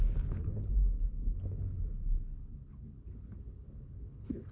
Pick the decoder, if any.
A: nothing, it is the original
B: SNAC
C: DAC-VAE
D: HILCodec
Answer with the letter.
D